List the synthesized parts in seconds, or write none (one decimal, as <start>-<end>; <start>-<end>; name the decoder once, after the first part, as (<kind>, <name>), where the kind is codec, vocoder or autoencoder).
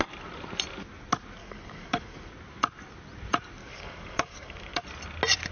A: 1.4-2.3 (codec, DAC); 3.6-4.8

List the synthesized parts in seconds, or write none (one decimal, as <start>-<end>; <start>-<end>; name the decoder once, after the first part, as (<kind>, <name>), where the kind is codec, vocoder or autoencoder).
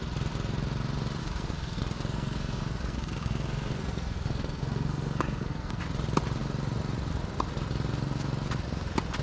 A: 1.2-5.8 (codec, SNAC)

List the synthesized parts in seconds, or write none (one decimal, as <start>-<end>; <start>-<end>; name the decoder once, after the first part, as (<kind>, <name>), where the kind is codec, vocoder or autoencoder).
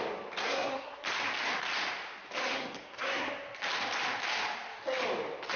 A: 0.4-1.0 (codec, SNAC); 2.4-3.3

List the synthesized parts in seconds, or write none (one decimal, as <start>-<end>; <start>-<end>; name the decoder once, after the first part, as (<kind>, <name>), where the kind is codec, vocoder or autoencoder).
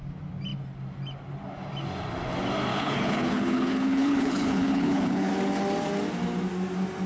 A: 2.7-5.3 (codec, HILCodec)